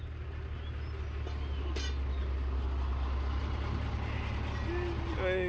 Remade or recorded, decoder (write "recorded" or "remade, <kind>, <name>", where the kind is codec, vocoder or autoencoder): recorded